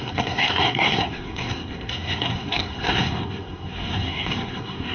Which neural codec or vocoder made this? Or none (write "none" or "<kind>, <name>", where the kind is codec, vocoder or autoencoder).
codec, SNAC